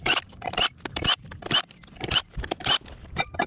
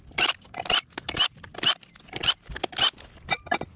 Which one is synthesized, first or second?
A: first